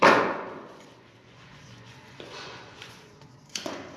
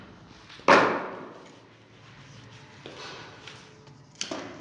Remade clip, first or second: first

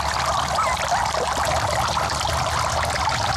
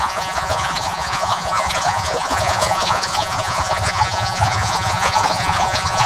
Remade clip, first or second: second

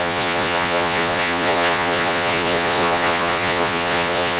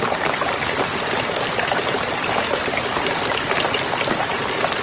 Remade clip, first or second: first